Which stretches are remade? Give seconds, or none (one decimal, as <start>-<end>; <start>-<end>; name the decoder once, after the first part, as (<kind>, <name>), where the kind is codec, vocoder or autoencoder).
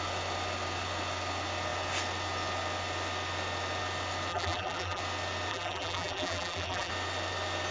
4.3-5.0 (vocoder, BigVGAN v2); 5.5-6.9